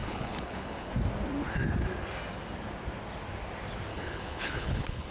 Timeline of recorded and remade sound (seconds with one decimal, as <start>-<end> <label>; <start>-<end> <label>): 0.0-0.9 remade; 0.9-3.9 recorded; 3.9-5.1 remade